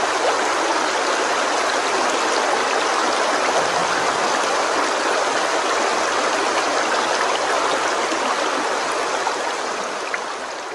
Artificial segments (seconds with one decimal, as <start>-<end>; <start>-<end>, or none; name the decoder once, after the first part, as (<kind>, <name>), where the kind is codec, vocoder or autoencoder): none

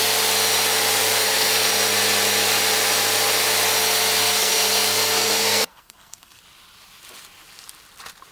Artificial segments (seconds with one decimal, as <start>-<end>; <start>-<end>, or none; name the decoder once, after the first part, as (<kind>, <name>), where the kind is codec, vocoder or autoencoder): 1.0-1.7 (codec, SNAC); 4.2-6.4

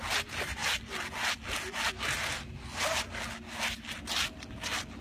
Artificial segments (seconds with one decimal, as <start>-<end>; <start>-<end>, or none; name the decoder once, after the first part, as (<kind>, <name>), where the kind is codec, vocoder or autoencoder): none

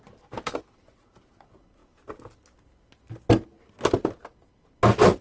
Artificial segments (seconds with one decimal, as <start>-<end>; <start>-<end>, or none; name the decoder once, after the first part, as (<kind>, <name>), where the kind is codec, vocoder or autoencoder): none

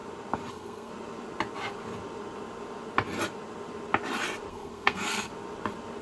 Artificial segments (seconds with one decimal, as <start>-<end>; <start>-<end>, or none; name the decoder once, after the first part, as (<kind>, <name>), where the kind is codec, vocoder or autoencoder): 0.5-0.9 (codec, SNAC); 4.5-5.3

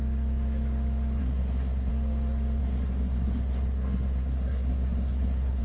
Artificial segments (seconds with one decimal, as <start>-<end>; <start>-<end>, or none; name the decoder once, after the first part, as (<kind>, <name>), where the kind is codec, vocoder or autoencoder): 1.2-1.9 (codec, SNAC); 2.6-5.6

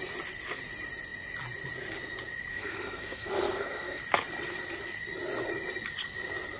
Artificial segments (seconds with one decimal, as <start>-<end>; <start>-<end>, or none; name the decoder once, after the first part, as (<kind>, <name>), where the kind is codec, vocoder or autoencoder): 2.5-4.0 (codec, SNAC)